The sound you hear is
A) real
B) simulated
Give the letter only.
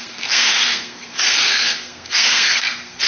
B